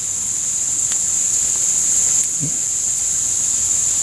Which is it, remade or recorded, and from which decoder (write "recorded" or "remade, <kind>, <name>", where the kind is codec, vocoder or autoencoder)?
recorded